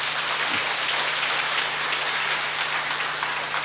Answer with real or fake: real